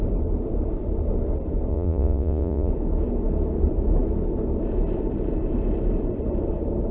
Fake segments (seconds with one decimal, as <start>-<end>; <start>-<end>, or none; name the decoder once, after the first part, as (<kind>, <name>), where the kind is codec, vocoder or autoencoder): 1.7-2.7 (vocoder, Vocos)